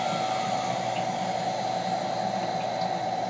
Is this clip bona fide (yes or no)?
yes